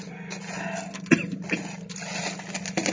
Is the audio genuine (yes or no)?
yes